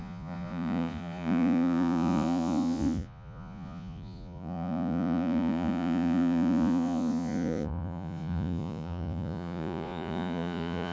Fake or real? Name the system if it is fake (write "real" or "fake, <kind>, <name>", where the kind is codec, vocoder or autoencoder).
fake, vocoder, Vocos